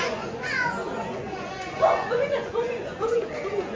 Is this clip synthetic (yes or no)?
yes